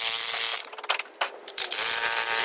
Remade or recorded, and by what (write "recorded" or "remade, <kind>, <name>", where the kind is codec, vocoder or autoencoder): remade, vocoder, BigVGAN v2